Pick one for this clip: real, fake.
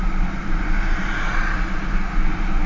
real